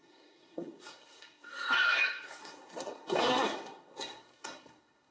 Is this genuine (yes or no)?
no